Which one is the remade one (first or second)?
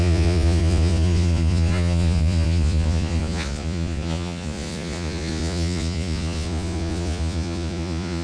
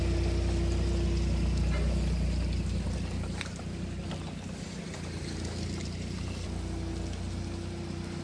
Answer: first